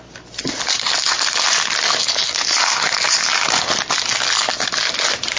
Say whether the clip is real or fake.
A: real